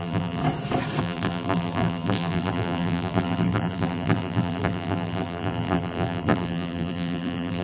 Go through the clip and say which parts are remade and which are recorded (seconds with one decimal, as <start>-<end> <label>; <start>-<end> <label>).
0.0-0.4 remade; 0.4-1.0 recorded; 1.0-7.6 remade